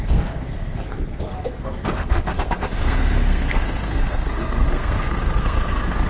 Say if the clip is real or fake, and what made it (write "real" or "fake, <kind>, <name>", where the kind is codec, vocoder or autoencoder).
fake, codec, SNAC